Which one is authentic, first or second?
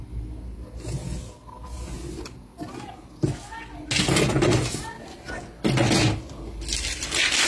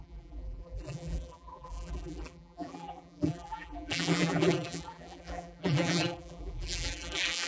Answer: first